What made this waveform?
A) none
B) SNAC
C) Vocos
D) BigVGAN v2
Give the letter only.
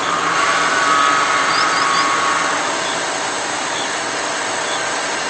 A